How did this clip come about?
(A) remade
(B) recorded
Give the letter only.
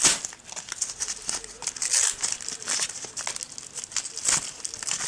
B